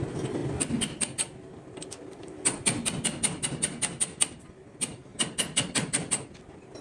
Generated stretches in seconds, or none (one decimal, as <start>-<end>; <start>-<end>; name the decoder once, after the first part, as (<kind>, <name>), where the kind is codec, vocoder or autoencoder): 5.1-6.2 (vocoder, BigVGAN v2)